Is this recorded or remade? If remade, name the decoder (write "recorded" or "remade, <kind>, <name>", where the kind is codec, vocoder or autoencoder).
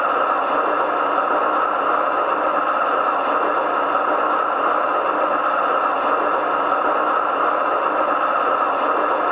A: recorded